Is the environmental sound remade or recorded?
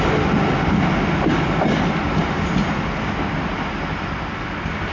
recorded